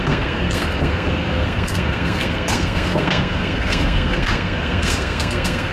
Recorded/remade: remade